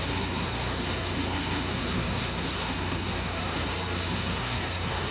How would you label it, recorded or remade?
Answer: remade